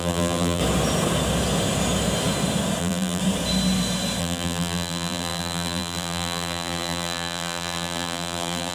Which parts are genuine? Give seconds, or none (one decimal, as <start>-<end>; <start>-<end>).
0.6-2.8; 3.2-4.2